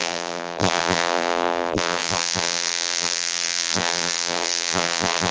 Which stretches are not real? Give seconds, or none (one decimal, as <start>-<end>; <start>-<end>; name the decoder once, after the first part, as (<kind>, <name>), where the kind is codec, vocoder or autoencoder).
0.0-5.3 (vocoder, BigVGAN v2)